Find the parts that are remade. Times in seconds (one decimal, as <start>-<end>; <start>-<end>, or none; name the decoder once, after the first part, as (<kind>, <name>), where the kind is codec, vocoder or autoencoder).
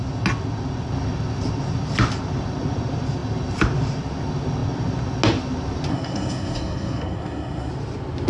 5.9-7.7 (codec, SNAC)